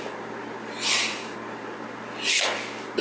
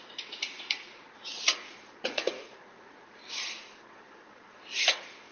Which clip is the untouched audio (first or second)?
first